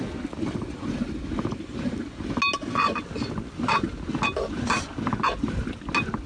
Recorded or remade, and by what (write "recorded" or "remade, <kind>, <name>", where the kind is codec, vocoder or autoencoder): recorded